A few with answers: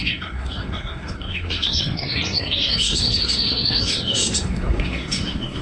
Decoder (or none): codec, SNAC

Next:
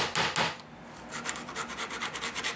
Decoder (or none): none